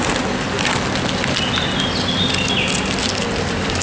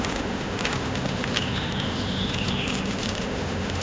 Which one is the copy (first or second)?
second